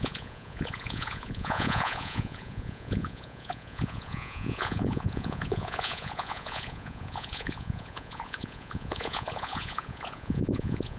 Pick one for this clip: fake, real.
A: fake